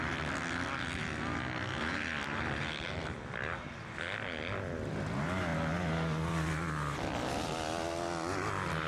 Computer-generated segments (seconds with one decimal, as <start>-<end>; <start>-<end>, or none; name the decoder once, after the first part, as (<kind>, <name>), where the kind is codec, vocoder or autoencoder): none